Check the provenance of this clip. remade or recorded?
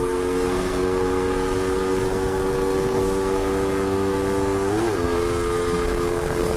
remade